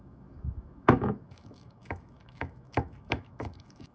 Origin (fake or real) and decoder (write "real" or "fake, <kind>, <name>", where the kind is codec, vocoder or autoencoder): fake, autoencoder, DAC-VAE